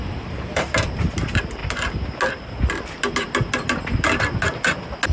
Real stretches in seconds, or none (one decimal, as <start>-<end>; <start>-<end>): 1.1-5.1